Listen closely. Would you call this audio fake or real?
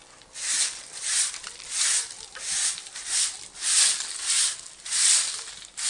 real